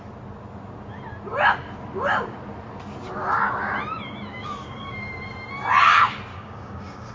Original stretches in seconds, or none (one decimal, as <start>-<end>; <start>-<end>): 0.0-4.3; 5.3-6.3